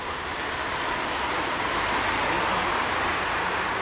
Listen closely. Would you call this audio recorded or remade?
recorded